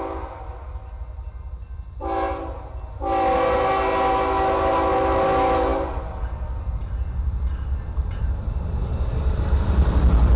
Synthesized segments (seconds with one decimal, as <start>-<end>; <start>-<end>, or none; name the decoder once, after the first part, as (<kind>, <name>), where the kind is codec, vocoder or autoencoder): none